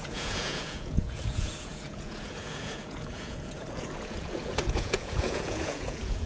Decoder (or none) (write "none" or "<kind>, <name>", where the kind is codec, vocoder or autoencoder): vocoder, Vocos